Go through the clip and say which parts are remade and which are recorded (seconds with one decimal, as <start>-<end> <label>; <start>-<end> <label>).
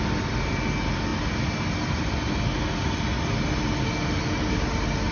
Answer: 0.0-5.1 recorded